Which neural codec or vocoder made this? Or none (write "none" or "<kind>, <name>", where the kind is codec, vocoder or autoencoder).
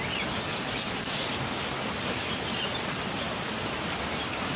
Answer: none